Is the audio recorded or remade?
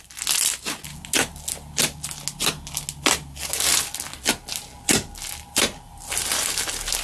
recorded